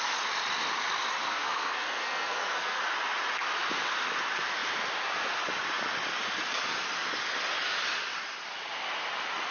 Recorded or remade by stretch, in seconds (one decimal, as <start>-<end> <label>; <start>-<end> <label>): 0.0-1.3 recorded; 1.3-2.8 remade; 2.8-9.5 recorded